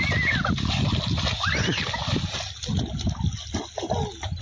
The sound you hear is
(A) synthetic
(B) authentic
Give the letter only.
B